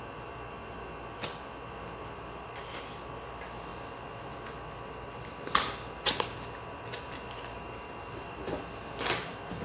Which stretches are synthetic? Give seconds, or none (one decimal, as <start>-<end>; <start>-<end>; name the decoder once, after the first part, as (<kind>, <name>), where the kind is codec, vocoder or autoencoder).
none